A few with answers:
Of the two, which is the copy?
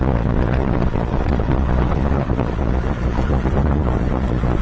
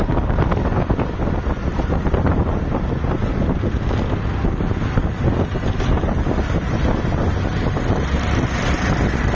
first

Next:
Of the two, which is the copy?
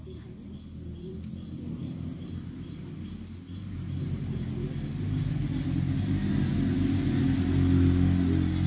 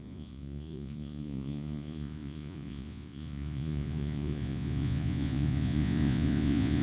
second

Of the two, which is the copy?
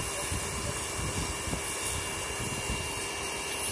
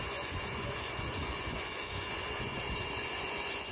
second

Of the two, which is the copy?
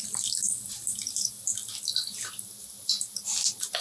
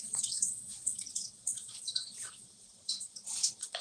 second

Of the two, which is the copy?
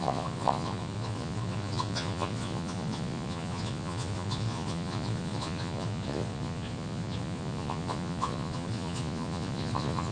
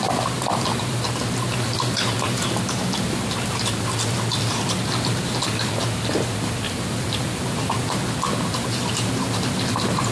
first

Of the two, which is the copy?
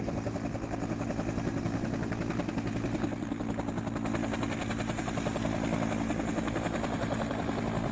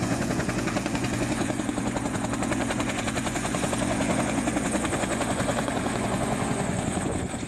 second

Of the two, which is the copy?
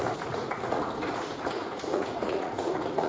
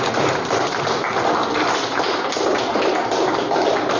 first